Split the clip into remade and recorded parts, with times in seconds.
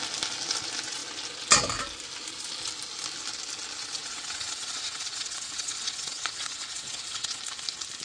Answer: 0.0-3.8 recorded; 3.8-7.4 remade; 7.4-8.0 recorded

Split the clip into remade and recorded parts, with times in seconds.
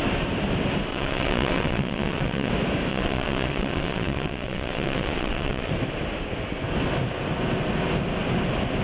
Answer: 0.0-0.9 recorded; 0.9-2.5 remade; 2.5-2.9 recorded; 2.9-5.7 remade; 5.7-8.8 recorded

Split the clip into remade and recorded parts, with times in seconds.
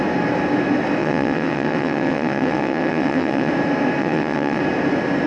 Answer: 0.0-1.0 recorded; 1.0-3.5 remade; 3.5-4.0 recorded; 4.0-4.6 remade; 4.6-5.3 recorded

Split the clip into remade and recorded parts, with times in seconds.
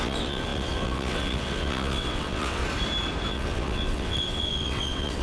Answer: 0.0-2.6 remade; 2.6-3.3 recorded; 3.3-5.2 remade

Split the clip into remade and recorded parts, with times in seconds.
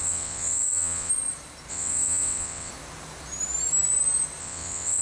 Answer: 0.0-1.1 remade; 1.1-1.7 recorded; 1.7-2.7 remade; 2.7-4.4 recorded; 4.4-5.0 remade